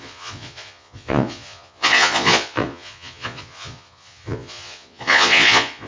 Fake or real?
fake